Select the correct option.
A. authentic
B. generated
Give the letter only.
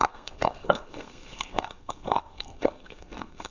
B